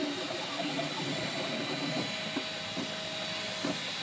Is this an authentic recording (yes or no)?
yes